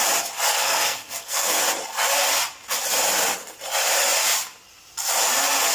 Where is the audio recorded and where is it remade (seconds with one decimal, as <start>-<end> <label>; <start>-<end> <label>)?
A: 0.0-0.5 recorded; 0.5-1.6 remade; 1.6-5.7 recorded